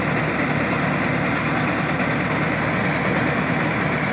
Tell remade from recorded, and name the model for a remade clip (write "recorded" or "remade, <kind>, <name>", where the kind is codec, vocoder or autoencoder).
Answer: recorded